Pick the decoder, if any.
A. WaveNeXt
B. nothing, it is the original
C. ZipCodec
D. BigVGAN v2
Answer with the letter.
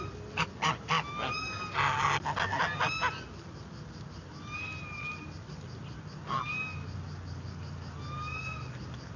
B